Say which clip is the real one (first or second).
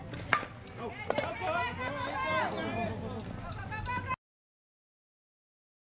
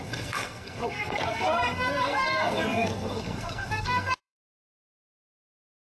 first